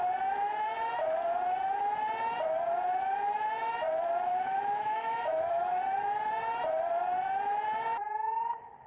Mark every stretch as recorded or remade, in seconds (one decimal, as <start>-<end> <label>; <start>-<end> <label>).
0.0-4.3 recorded; 4.3-5.8 remade; 5.8-8.9 recorded